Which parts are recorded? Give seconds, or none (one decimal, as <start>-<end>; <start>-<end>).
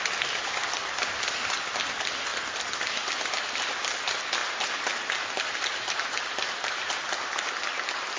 0.0-4.4; 7.0-8.2